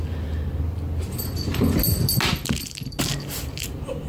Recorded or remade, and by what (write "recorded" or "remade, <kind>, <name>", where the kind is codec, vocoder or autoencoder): recorded